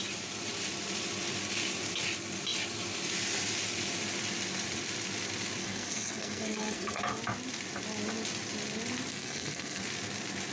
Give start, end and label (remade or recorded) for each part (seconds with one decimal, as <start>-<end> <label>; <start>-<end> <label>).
0.0-5.6 recorded; 5.6-7.0 remade; 7.0-9.1 recorded; 9.1-9.8 remade; 9.8-10.5 recorded